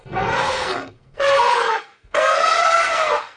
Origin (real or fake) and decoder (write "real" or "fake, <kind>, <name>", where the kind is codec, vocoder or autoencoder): fake, codec, SNAC